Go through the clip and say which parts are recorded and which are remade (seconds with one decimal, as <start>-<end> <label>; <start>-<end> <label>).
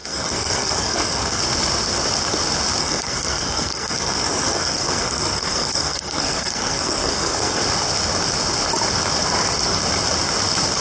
0.0-1.4 remade; 1.4-2.8 recorded; 2.8-7.6 remade; 7.6-10.8 recorded